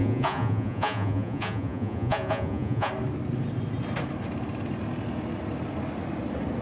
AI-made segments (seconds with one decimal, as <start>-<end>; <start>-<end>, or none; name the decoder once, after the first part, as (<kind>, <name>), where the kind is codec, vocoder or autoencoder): 0.0-2.9 (vocoder, Vocos)